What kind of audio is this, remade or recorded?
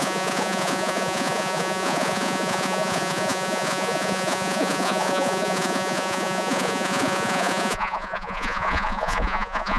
remade